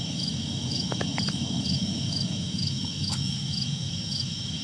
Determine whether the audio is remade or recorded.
remade